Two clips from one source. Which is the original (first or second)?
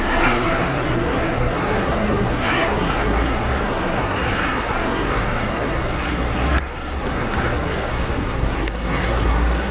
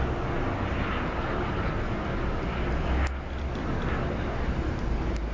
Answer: second